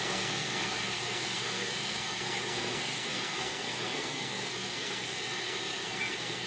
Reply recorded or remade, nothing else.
remade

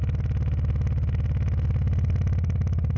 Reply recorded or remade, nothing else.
recorded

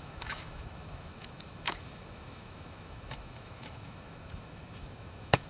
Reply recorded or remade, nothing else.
remade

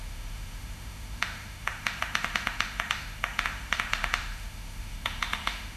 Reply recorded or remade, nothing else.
remade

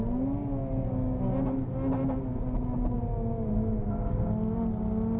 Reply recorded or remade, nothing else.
recorded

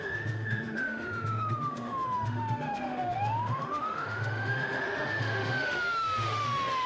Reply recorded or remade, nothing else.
remade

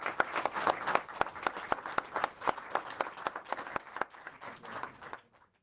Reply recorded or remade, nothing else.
recorded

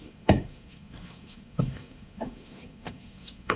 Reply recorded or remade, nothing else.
remade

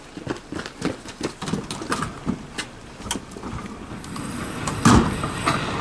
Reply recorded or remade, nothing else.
recorded